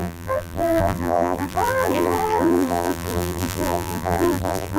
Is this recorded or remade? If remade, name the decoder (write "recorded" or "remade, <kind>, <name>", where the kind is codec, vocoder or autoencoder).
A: remade, vocoder, BigVGAN v2